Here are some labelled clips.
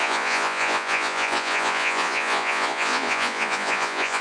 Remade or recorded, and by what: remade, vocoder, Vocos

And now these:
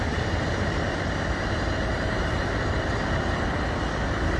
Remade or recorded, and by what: recorded